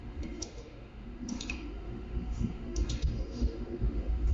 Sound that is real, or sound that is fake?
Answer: fake